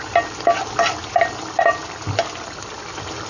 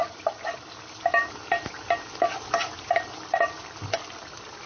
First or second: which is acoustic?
first